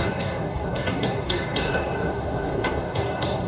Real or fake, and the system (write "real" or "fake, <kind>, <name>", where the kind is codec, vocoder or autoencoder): fake, codec, SNAC